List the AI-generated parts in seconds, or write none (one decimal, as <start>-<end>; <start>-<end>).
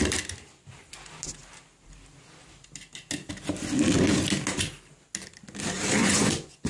6.0-6.7